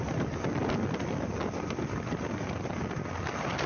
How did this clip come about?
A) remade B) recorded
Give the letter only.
B